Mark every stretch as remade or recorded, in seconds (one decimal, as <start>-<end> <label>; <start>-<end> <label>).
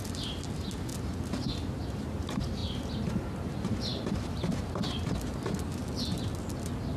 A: 0.0-7.0 recorded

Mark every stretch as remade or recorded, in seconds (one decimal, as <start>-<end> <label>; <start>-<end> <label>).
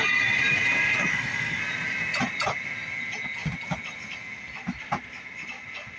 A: 0.0-1.1 recorded; 1.1-1.6 remade; 1.6-6.0 recorded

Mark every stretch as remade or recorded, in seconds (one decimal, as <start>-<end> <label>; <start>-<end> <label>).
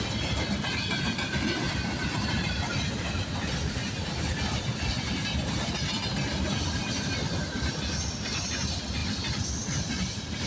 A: 0.0-10.5 recorded